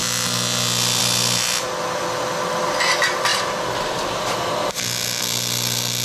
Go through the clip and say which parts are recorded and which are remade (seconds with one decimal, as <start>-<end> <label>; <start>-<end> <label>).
0.0-6.0 recorded